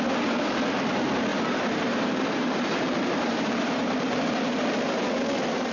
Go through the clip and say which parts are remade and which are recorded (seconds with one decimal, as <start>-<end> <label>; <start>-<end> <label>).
0.0-1.3 recorded; 1.3-4.3 remade; 4.3-5.7 recorded